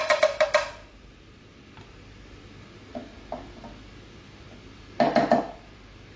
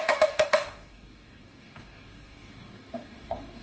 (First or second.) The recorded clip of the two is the first